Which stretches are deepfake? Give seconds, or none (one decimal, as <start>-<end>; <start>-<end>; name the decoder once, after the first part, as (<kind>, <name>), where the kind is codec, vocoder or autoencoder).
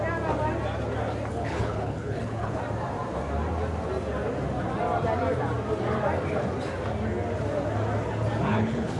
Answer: 1.3-2.6 (codec, HILCodec); 8.5-9.0